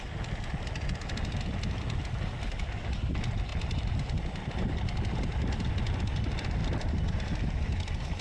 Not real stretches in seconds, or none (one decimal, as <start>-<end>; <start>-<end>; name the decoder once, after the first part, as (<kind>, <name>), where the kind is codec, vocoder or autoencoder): none